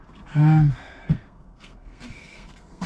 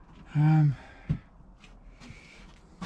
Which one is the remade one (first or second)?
first